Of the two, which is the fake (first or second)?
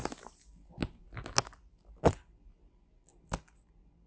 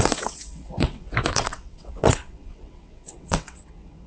second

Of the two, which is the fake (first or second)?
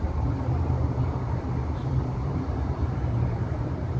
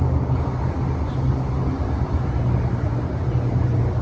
first